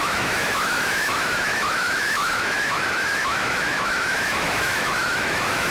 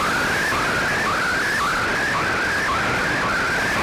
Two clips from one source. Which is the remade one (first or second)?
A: first